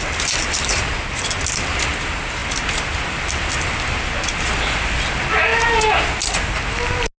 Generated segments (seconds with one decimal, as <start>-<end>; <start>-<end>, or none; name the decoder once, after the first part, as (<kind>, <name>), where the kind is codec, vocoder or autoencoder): none

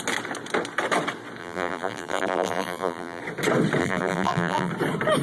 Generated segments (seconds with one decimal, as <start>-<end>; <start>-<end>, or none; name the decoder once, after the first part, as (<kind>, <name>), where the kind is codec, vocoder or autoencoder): 1.4-3.2 (vocoder, BigVGAN v2); 3.8-4.7

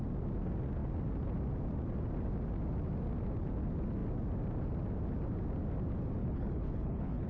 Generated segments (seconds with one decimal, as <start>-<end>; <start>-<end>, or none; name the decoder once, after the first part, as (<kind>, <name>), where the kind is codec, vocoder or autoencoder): 6.2-7.3 (codec, HILCodec)